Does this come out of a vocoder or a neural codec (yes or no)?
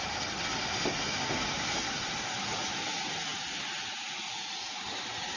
no